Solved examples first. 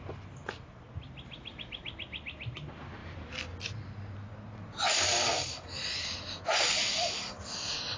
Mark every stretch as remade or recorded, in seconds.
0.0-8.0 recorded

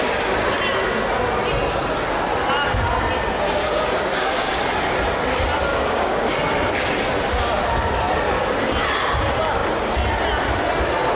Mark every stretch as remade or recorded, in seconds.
0.0-3.6 recorded; 3.6-4.6 remade; 4.6-5.7 recorded; 5.7-6.3 remade; 6.3-11.2 recorded

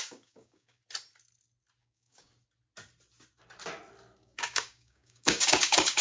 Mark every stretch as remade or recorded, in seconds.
0.0-0.8 remade; 0.8-1.8 recorded; 1.8-2.3 remade; 2.3-4.2 recorded; 4.2-6.0 remade

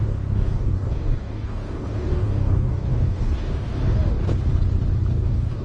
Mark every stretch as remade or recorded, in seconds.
0.0-4.2 remade; 4.2-5.1 recorded; 5.1-5.6 remade

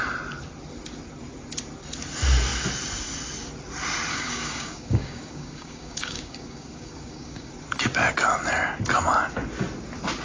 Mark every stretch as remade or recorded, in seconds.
0.0-4.1 recorded; 4.1-7.5 remade; 7.5-10.2 recorded

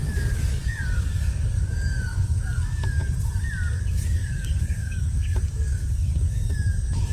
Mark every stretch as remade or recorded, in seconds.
0.0-3.0 remade; 3.0-3.8 recorded; 3.8-7.1 remade

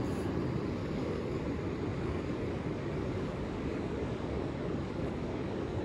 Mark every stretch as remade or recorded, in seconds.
0.0-0.8 recorded; 0.8-1.4 remade; 1.4-1.9 recorded; 1.9-5.8 remade